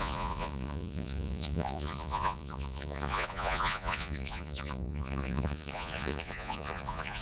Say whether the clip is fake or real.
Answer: fake